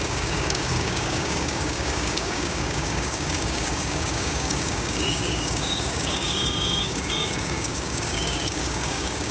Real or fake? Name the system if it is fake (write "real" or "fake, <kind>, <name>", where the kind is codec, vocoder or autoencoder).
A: fake, codec, DAC